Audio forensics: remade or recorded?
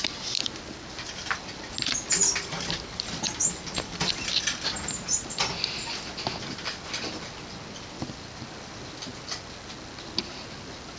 recorded